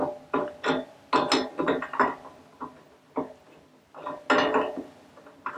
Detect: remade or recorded recorded